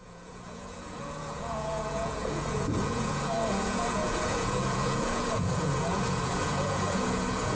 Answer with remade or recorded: remade